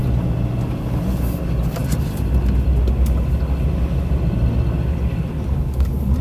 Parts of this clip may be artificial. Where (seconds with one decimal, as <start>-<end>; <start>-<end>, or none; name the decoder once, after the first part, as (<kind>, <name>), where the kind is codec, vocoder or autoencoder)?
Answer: none